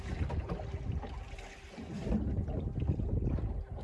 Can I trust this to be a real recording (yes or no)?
yes